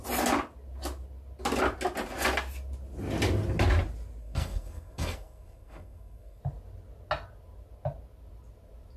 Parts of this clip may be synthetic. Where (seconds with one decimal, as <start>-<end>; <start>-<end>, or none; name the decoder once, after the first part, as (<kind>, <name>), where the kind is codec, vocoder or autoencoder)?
4.2-6.4 (codec, SNAC)

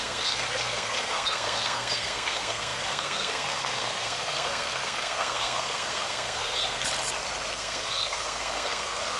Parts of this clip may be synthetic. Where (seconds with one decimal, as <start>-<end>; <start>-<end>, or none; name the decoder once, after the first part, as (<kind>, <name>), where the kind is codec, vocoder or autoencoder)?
0.0-6.8 (codec, SNAC); 7.5-9.2

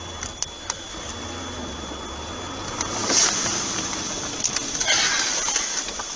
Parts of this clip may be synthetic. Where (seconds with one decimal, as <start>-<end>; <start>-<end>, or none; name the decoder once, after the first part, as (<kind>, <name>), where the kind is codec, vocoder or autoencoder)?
none

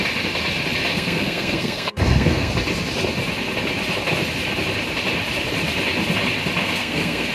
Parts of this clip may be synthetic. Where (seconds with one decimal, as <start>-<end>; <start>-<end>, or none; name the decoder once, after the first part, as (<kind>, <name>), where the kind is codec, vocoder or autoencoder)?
0.9-2.5 (codec, SNAC); 6.6-7.3

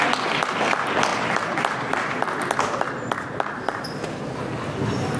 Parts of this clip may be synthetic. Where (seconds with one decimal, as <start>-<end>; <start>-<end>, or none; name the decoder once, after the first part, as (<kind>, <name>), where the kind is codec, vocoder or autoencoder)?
none